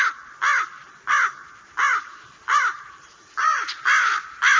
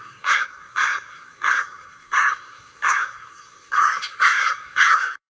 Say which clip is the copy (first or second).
second